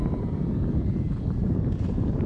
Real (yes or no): no